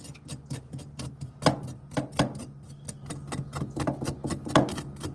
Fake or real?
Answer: real